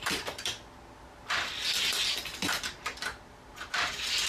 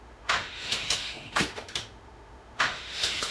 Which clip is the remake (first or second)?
second